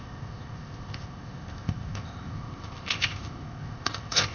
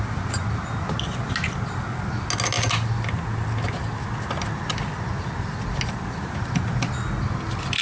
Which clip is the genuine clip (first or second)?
second